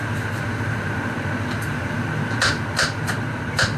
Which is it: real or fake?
real